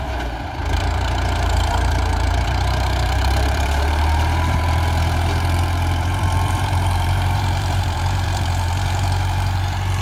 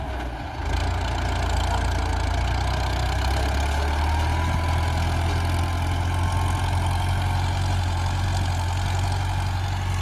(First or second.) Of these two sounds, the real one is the second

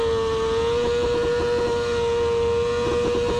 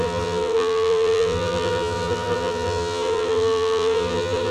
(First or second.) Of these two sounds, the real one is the first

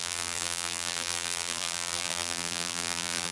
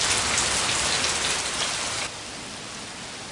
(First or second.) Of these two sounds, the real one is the second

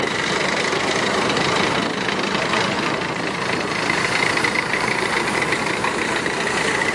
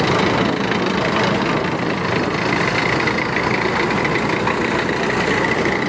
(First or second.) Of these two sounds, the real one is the second